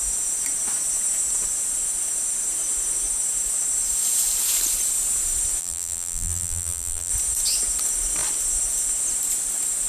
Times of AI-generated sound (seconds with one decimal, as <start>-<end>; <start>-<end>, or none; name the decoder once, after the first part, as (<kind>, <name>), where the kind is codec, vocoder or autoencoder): 5.6-7.1 (vocoder, BigVGAN v2)